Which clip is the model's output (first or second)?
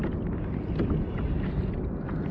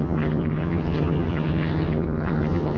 second